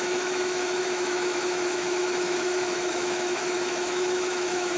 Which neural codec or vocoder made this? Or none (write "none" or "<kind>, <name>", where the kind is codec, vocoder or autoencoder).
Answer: autoencoder, DAC-VAE